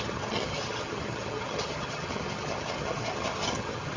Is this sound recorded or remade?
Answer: remade